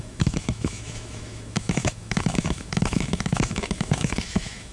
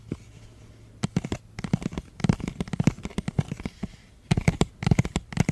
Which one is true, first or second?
second